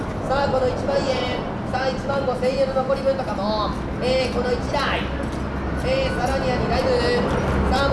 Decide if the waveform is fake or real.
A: real